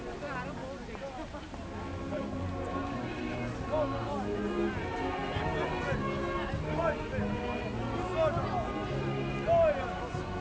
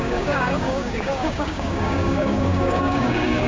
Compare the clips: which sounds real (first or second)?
first